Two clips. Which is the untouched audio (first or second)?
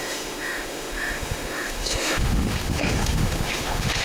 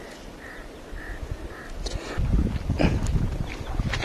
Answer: second